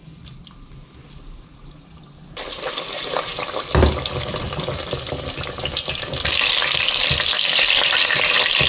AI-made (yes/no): no